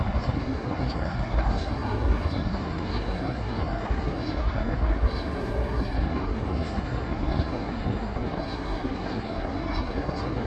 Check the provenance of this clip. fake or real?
fake